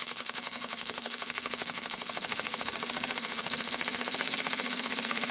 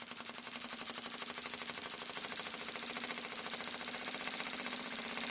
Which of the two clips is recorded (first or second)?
second